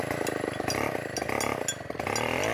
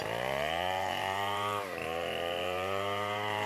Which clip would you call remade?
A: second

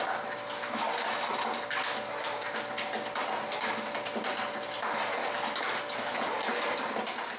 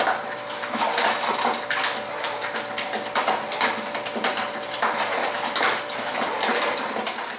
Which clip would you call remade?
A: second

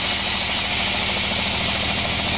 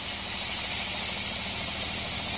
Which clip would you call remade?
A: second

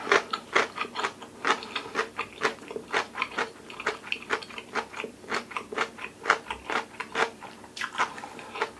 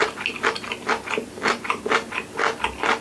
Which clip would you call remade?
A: first